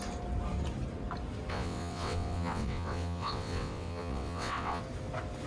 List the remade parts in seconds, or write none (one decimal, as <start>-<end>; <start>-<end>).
1.5-4.8